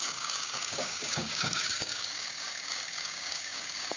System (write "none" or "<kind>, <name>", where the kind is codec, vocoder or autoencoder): codec, DAC